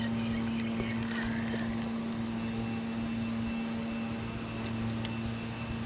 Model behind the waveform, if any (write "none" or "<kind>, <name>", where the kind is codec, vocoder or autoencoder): none